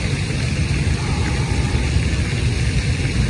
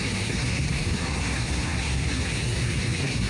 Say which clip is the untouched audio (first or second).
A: first